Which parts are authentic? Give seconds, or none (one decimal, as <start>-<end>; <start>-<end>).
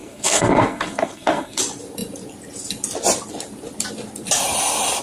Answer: 1.6-5.0